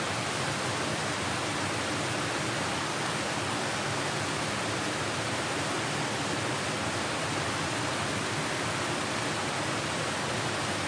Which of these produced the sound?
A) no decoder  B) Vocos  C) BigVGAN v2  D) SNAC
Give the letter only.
A